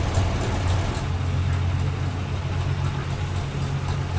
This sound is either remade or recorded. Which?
recorded